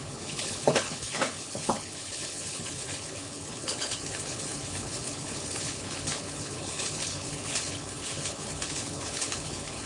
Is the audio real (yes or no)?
no